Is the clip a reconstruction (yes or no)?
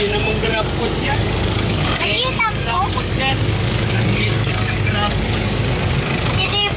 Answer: yes